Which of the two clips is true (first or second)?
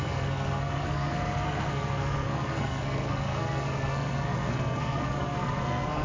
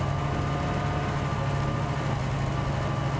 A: second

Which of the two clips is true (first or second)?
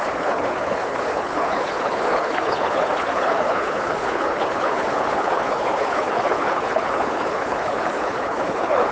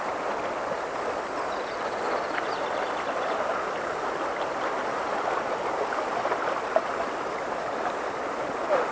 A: second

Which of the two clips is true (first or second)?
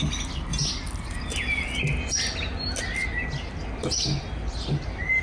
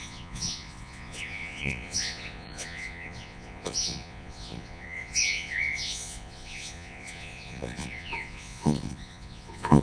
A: first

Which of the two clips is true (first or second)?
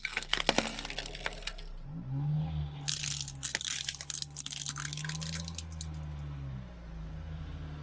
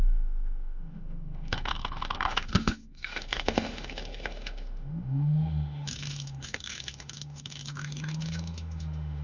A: first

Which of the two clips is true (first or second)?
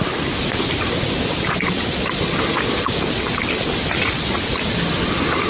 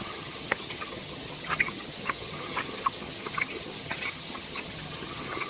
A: first